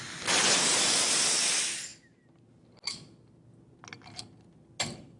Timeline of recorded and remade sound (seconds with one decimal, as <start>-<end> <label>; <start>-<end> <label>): 0.0-5.2 recorded